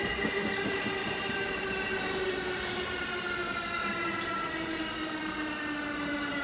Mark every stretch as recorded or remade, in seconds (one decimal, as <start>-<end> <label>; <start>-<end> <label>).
0.0-6.4 recorded

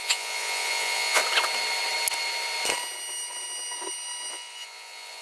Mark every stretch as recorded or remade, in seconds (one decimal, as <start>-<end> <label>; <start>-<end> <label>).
0.0-1.2 remade; 1.2-4.3 recorded; 4.3-5.2 remade

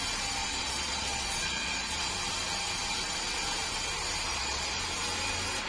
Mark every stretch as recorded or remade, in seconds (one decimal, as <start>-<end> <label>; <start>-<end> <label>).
0.0-0.4 recorded; 0.4-2.1 remade; 2.1-4.3 recorded; 4.3-4.8 remade; 4.8-5.7 recorded

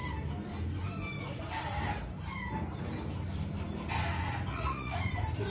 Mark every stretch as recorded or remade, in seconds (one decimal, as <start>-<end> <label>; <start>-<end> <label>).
0.0-4.5 recorded; 4.5-5.1 remade; 5.1-5.5 recorded

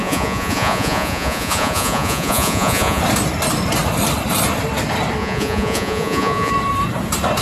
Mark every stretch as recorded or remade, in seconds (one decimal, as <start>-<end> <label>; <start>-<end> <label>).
0.0-3.0 remade; 3.0-5.2 recorded; 5.2-6.5 remade; 6.5-7.4 recorded

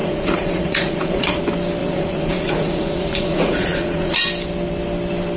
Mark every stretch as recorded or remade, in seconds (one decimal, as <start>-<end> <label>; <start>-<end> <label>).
0.0-1.4 remade; 1.4-1.8 recorded; 1.8-4.2 remade; 4.2-5.4 recorded